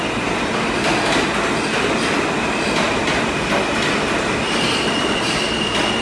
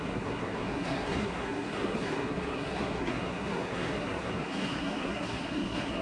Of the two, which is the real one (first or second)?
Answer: first